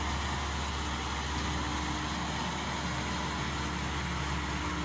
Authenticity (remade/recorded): recorded